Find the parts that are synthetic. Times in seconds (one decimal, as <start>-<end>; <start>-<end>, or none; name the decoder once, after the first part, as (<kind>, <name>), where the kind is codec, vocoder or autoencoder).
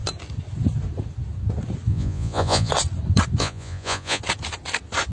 1.9-2.7 (vocoder, Vocos); 3.4-4.2